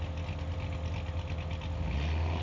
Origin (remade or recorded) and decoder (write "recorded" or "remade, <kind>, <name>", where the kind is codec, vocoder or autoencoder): recorded